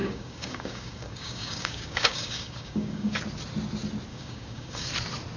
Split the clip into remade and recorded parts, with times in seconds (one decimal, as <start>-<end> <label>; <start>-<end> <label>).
0.0-3.2 remade; 3.2-4.1 recorded; 4.1-4.9 remade; 4.9-5.4 recorded